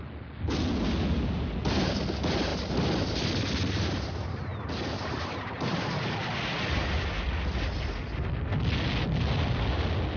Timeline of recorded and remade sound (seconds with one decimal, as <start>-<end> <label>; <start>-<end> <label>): 0.0-10.2 recorded